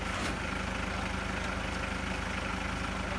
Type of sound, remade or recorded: recorded